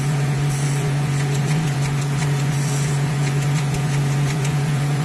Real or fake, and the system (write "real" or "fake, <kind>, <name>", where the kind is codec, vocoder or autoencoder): fake, vocoder, Vocos